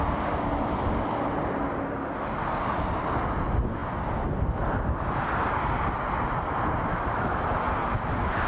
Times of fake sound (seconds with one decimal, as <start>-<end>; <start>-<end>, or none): 6.9-7.4